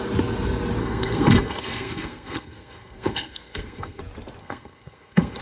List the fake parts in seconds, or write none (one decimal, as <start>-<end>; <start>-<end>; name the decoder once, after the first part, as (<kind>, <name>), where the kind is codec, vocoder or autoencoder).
0.8-4.0 (codec, SNAC); 4.4-5.4